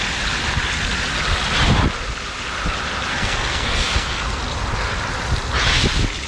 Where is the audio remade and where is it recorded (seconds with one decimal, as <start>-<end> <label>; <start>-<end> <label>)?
0.0-3.1 recorded; 3.1-4.4 remade; 4.4-6.3 recorded